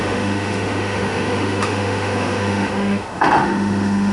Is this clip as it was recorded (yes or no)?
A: no